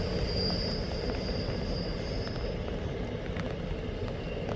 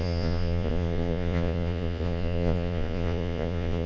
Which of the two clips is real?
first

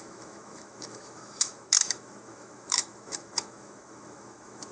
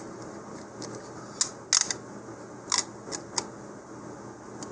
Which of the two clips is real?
second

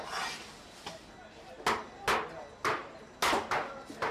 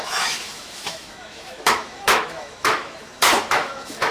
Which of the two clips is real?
first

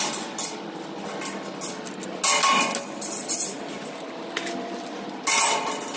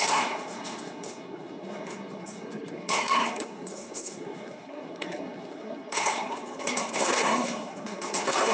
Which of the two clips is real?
first